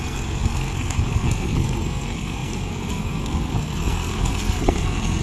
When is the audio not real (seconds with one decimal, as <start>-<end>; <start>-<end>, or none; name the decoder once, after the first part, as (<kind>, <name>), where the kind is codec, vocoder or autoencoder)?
0.0-5.2 (codec, SNAC)